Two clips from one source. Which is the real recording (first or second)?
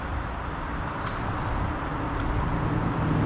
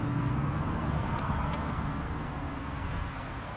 first